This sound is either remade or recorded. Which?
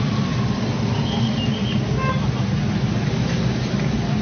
recorded